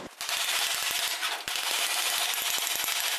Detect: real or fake real